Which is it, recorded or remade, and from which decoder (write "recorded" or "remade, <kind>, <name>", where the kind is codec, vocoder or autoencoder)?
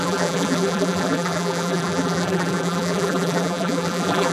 remade, vocoder, BigVGAN v2